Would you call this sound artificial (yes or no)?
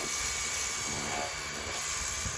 no